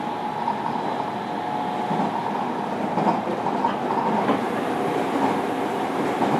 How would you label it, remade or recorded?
recorded